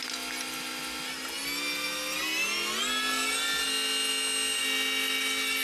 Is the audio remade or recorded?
recorded